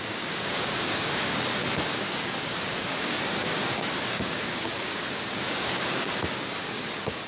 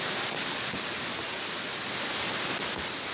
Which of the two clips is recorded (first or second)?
second